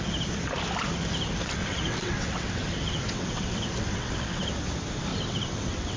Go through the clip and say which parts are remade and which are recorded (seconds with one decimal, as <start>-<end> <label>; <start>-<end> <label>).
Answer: 0.0-1.6 recorded; 1.6-4.5 remade; 4.5-5.1 recorded; 5.1-6.0 remade